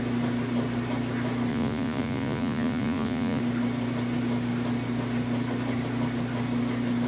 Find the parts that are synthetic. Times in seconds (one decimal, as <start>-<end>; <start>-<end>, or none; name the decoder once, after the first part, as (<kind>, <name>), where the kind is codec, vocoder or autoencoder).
1.5-3.4 (vocoder, Vocos)